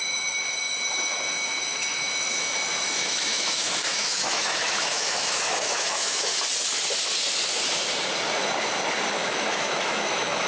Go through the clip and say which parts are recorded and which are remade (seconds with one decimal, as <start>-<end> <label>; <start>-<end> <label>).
0.0-6.3 remade; 6.3-9.1 recorded; 9.1-10.5 remade